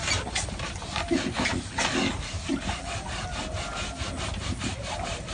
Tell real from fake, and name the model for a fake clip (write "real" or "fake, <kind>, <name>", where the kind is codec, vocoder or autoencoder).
real